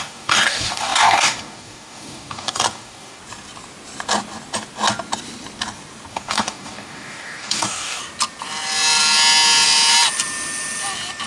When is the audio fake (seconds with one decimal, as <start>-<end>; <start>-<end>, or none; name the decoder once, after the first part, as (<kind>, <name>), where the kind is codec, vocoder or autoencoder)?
0.0-3.2 (codec, DAC); 6.1-8.0